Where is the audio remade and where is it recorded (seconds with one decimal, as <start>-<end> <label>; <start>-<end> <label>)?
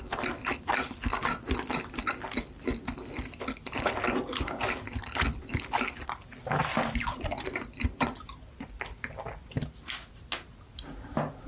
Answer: 0.0-11.5 recorded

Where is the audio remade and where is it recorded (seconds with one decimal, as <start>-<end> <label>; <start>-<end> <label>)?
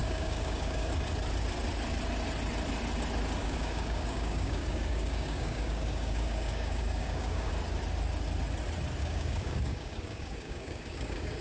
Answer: 0.0-0.9 remade; 0.9-3.4 recorded; 3.4-7.5 remade; 7.5-9.0 recorded; 9.0-11.4 remade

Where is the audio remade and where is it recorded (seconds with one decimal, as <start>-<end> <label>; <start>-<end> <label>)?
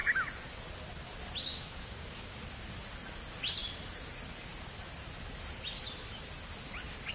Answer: 0.0-1.5 recorded; 1.5-2.3 remade; 2.3-7.1 recorded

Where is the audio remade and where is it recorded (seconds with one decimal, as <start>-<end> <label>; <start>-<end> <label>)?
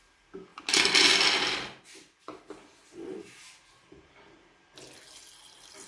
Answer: 0.0-5.9 recorded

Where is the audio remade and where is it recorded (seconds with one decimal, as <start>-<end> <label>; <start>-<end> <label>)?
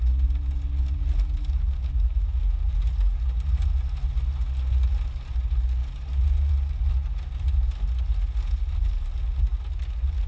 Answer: 0.0-10.3 recorded